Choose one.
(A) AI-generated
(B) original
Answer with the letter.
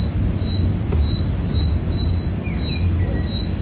B